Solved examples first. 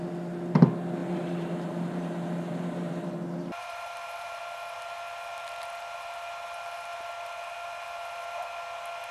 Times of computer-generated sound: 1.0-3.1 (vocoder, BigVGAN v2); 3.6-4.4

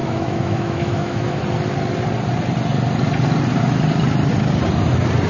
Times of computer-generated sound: 0.0-1.4 (autoencoder, DAC-VAE)

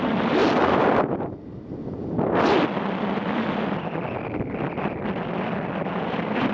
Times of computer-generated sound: none